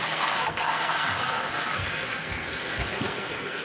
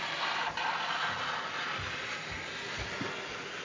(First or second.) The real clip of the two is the second